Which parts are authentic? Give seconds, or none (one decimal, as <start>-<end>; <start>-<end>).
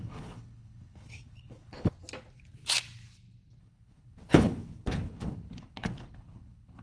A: 1.9-3.6